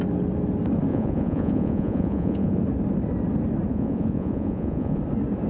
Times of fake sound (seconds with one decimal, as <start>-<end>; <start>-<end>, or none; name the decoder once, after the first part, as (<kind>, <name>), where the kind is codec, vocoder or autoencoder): 0.9-2.6 (vocoder, Vocos); 3.7-5.0